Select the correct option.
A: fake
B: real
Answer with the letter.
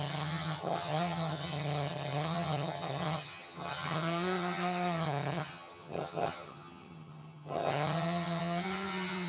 A